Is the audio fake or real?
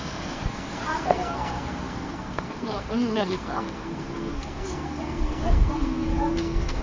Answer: fake